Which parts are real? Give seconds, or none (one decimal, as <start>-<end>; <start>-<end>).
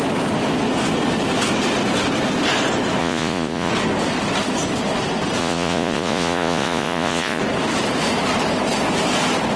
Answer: 0.0-3.0; 3.7-5.4; 7.4-9.6